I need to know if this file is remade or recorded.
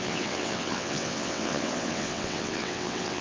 remade